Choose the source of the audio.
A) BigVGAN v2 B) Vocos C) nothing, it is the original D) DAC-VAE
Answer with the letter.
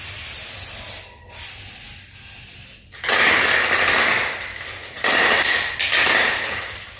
C